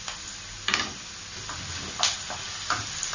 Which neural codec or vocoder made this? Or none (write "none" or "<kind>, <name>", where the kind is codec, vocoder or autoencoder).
none